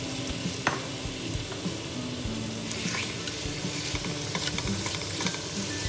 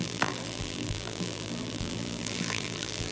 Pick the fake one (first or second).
second